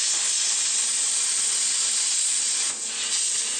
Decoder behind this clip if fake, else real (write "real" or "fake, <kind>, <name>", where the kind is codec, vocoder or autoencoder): real